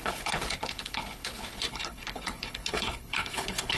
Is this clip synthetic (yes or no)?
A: yes